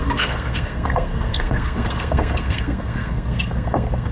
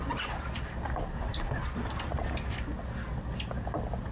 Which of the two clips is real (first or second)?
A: second